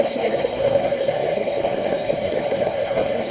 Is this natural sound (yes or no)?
no